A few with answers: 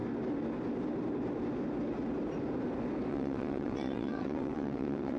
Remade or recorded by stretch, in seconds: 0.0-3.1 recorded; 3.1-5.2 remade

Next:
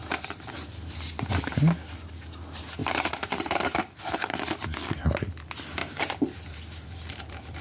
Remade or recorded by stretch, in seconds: 0.0-2.8 recorded; 2.8-4.0 remade; 4.0-5.8 recorded; 5.8-7.6 remade